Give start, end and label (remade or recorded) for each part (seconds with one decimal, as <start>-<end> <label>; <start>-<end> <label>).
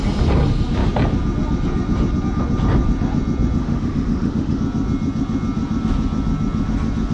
0.0-3.6 recorded; 3.6-4.6 remade; 4.6-7.1 recorded